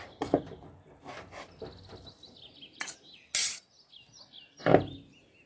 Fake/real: real